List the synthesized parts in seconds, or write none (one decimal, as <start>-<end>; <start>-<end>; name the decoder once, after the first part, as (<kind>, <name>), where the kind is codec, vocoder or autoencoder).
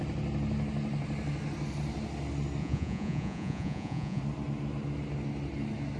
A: 2.6-4.2 (vocoder, Vocos)